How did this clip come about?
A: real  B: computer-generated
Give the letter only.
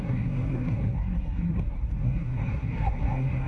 B